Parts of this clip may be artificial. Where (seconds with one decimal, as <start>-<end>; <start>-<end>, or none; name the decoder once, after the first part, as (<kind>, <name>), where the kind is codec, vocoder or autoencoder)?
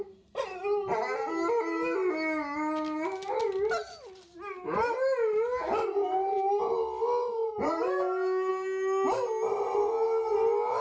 none